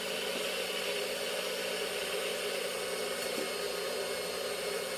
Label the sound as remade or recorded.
recorded